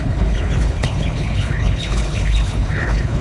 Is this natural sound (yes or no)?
no